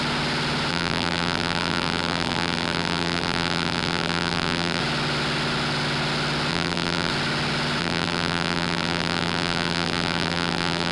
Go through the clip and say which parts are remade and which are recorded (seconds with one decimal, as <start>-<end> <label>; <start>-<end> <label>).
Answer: 0.0-0.7 recorded; 0.7-4.8 remade; 4.8-6.5 recorded; 6.5-7.1 remade; 7.1-7.8 recorded; 7.8-10.9 remade